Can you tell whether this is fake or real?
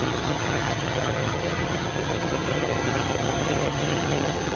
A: fake